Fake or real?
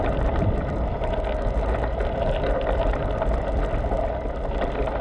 real